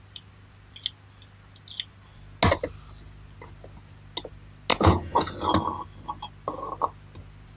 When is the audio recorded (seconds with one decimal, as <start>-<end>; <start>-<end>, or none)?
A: 0.0-4.7; 5.3-7.6